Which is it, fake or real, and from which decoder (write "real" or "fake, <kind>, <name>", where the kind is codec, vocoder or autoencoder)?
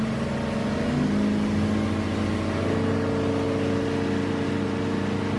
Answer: real